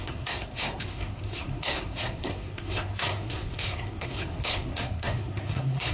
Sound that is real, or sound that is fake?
fake